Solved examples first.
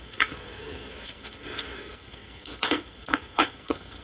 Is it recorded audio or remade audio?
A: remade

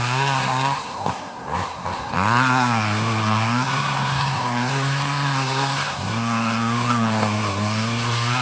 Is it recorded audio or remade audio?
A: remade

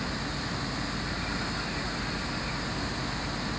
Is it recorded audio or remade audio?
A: recorded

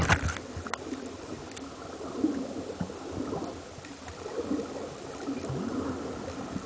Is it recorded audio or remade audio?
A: recorded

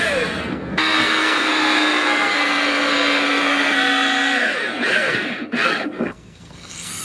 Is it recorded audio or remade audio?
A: remade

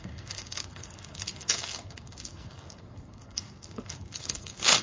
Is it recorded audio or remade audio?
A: remade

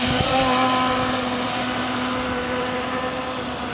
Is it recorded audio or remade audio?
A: recorded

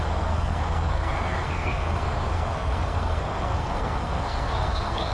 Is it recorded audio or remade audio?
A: remade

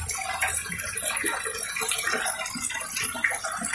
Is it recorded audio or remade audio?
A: recorded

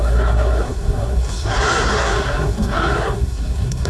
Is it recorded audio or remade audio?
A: remade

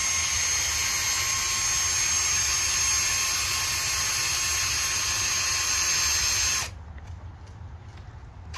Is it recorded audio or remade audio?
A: recorded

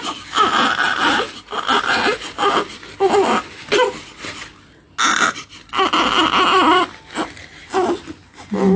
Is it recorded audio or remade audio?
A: recorded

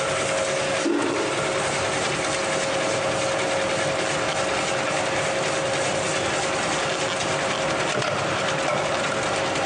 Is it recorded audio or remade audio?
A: recorded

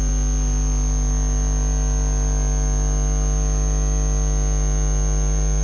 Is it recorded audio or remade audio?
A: recorded